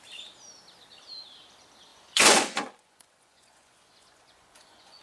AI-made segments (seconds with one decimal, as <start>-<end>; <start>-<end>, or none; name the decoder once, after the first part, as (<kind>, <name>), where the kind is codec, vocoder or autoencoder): 1.9-5.0 (vocoder, Vocos)